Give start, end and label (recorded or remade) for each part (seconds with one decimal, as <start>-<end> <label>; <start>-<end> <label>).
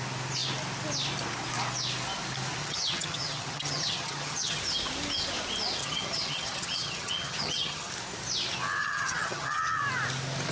0.0-2.6 recorded; 2.6-4.6 remade; 4.6-5.8 recorded; 5.8-7.9 remade; 7.9-8.8 recorded; 8.8-9.8 remade; 9.8-10.5 recorded